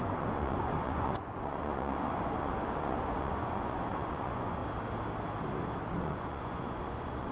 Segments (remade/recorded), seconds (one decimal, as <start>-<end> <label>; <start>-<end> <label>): 0.0-4.6 remade; 4.6-5.9 recorded; 5.9-7.3 remade